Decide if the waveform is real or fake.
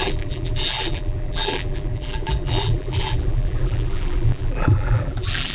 fake